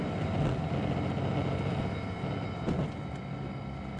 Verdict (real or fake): real